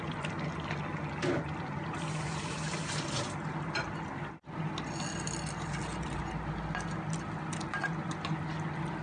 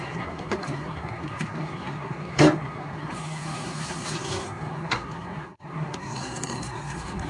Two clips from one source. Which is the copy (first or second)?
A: second